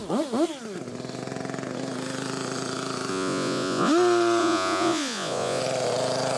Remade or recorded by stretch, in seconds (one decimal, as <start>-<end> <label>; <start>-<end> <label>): 0.0-3.1 recorded; 3.1-3.9 remade; 3.9-4.4 recorded; 4.4-5.6 remade; 5.6-6.4 recorded